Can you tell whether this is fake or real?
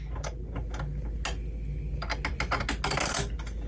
real